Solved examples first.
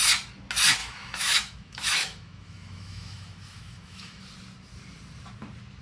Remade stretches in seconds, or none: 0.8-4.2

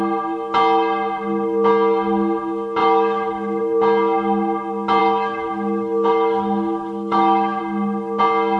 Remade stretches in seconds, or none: 2.8-3.6; 5.0-7.6

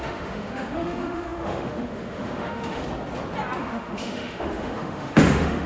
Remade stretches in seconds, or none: 0.0-2.8; 3.6-5.7

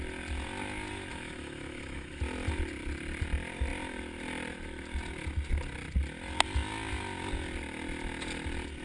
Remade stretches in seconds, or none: 1.1-2.2

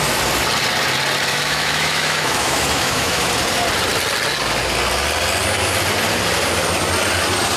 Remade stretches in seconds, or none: 1.3-3.3

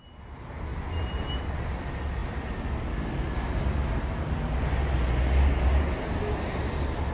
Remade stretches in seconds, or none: none

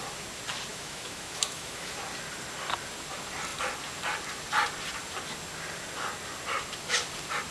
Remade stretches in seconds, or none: 0.7-1.9

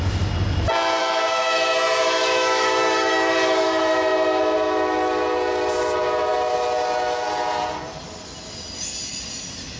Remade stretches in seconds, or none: 1.0-4.4